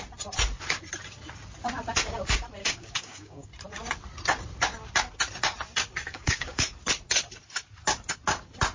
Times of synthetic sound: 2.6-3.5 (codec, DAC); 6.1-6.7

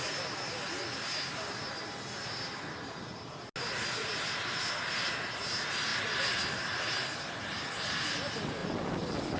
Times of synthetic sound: none

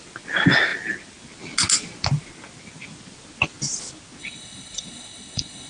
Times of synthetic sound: 4.2-5.7 (codec, HILCodec)

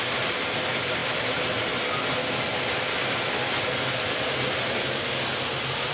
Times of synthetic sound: none

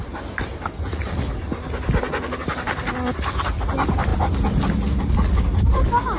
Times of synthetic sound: none

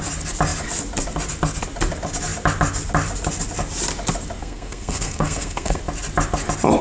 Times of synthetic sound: 4.4-5.8 (codec, SNAC)

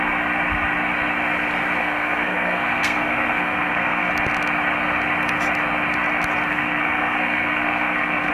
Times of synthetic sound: 1.8-4.1 (codec, SNAC); 6.5-8.3

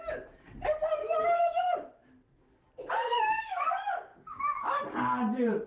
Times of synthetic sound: 1.0-2.6 (autoencoder, DAC-VAE); 4.1-4.8